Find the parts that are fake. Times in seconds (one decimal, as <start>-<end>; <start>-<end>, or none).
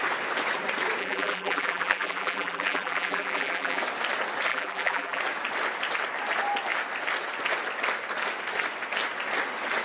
1.0-3.8; 4.5-5.2